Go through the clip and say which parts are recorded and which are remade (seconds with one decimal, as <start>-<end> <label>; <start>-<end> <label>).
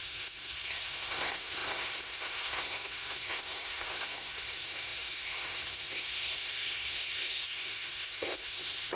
0.0-9.0 remade